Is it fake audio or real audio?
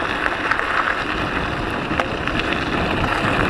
real